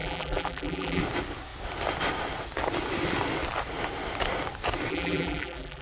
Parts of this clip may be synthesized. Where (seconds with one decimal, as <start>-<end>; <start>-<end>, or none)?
0.0-1.0; 4.9-5.8